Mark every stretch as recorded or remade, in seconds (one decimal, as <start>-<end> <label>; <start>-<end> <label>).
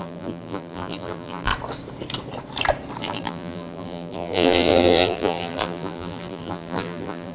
0.0-1.5 remade; 1.5-3.0 recorded; 3.0-7.3 remade